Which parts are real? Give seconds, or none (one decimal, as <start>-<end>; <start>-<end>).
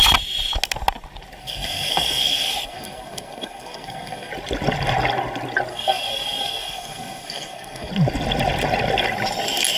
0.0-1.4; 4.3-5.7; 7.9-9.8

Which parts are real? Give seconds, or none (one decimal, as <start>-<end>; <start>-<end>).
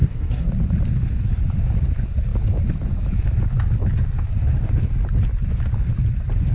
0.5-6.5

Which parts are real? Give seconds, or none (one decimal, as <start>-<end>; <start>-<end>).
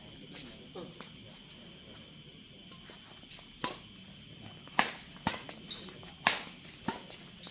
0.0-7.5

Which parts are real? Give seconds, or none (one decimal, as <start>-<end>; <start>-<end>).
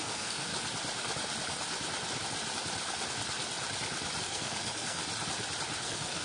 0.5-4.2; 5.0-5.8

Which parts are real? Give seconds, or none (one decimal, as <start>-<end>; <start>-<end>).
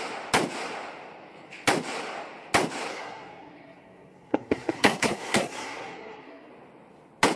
0.0-2.9; 6.5-7.4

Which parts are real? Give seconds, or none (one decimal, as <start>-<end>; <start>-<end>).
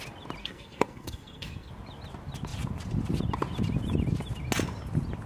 0.0-0.4; 1.7-5.3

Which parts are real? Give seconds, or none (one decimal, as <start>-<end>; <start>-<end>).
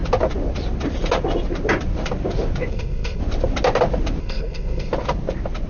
0.0-2.7; 3.2-4.2; 4.9-5.7